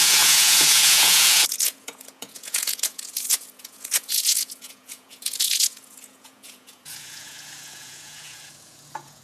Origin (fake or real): fake